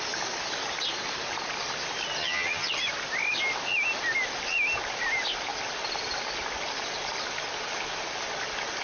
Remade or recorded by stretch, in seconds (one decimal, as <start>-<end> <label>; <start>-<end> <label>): 0.0-2.2 recorded; 2.2-2.7 remade; 2.7-8.8 recorded